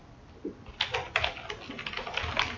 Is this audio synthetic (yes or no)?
no